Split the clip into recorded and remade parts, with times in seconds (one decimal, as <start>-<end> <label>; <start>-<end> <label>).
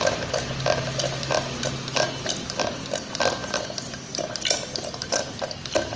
0.0-6.0 recorded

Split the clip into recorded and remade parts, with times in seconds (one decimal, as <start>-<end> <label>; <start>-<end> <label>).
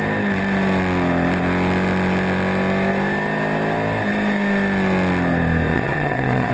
0.0-5.7 recorded; 5.7-6.5 remade